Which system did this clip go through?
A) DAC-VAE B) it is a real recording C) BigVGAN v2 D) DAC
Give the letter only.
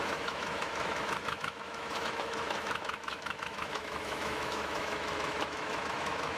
A